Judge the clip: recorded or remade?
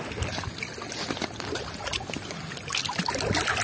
recorded